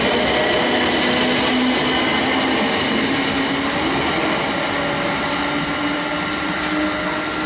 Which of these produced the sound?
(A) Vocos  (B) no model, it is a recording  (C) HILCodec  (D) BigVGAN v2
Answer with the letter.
B